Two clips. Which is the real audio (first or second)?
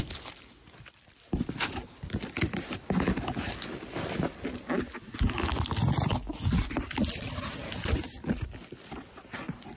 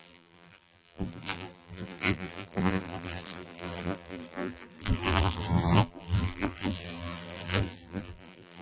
first